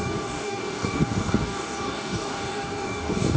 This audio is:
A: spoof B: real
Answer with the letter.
A